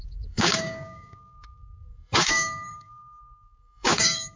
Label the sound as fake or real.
fake